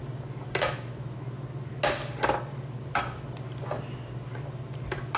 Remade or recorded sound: recorded